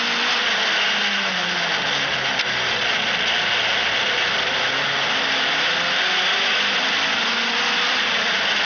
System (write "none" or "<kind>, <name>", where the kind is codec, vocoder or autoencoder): none